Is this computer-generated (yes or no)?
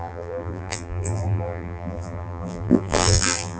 yes